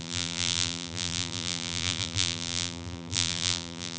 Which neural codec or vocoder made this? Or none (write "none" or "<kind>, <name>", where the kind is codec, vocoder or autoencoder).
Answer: vocoder, BigVGAN v2